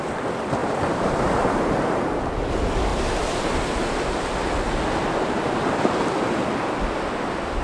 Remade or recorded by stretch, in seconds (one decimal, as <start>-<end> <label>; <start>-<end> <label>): 0.0-0.6 recorded; 0.6-2.3 remade; 2.3-2.9 recorded; 2.9-3.5 remade; 3.5-7.6 recorded